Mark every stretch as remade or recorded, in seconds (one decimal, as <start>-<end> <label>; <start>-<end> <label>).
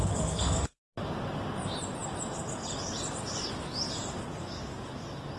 0.0-0.9 remade; 0.9-5.4 recorded